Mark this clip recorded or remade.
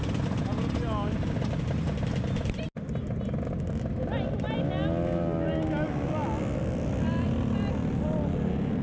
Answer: recorded